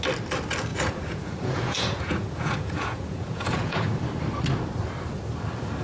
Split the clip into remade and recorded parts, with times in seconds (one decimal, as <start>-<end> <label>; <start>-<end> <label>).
0.0-0.7 recorded; 0.7-4.0 remade; 4.0-5.8 recorded